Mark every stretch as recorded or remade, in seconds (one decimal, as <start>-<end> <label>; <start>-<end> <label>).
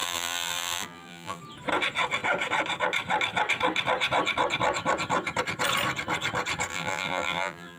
0.0-1.4 remade; 1.4-6.7 recorded; 6.7-7.8 remade